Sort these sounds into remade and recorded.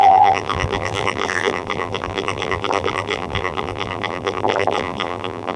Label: remade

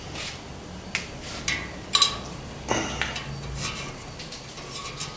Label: recorded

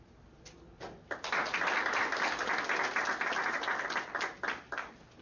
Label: recorded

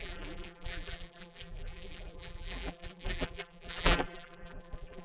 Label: remade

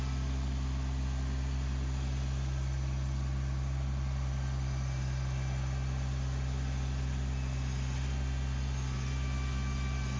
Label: recorded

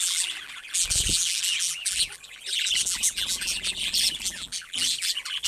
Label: remade